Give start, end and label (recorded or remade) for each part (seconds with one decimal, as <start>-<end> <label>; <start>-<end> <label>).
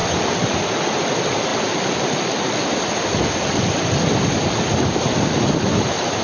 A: 0.0-1.1 remade; 1.1-1.5 recorded; 1.5-5.2 remade; 5.2-6.2 recorded